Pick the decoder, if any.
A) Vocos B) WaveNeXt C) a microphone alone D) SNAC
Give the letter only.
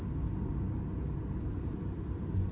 C